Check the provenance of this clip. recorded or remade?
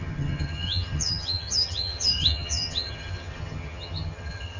remade